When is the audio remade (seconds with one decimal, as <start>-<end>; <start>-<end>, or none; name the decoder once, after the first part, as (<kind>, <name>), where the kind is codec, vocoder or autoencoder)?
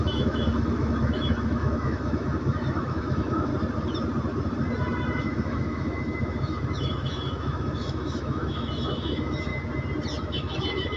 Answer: 0.0-3.5 (autoencoder, DAC-VAE); 5.2-9.5; 10.2-11.0